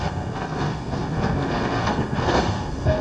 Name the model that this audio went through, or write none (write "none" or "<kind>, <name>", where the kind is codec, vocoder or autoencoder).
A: codec, SNAC